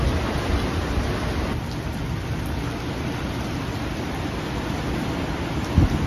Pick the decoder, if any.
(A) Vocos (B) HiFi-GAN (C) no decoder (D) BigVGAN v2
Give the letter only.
C